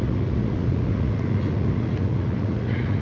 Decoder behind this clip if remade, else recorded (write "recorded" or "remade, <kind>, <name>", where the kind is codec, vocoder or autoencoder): remade, vocoder, Vocos